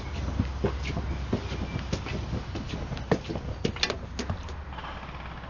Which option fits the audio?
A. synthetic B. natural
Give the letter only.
B